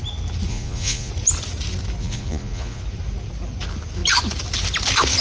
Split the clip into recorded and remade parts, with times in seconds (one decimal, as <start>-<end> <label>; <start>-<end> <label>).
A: 0.0-0.5 recorded; 0.5-1.1 remade; 1.1-2.0 recorded; 2.0-2.8 remade; 2.8-5.2 recorded